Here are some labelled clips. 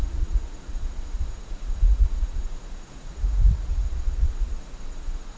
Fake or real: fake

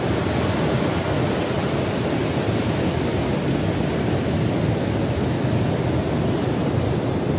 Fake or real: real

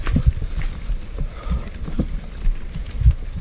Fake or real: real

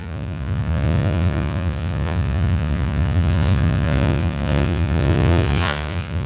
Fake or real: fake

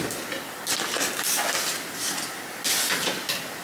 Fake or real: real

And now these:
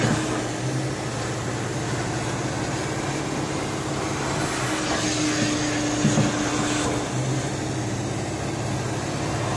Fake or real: real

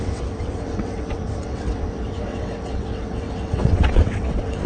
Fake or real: fake